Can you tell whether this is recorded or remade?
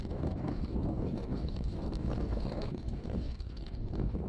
remade